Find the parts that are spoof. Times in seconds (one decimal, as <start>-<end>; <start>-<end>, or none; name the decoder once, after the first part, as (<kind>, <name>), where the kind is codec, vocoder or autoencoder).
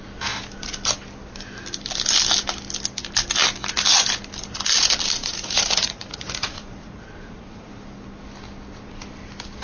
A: 5.2-7.7 (vocoder, Vocos)